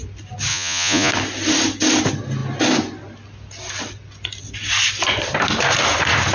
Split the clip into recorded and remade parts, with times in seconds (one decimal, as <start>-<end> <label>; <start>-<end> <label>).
0.0-0.5 recorded; 0.5-1.1 remade; 1.1-6.3 recorded